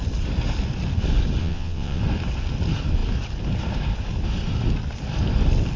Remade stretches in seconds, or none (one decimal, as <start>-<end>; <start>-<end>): 1.4-2.0